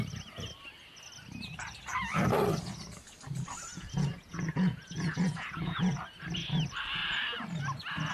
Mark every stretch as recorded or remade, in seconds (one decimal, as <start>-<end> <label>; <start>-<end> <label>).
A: 0.0-3.7 recorded; 3.7-5.9 remade; 5.9-8.1 recorded